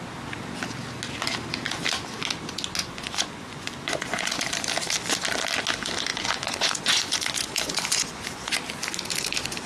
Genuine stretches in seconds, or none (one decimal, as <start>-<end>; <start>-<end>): 0.0-2.8; 4.3-6.1; 8.5-9.7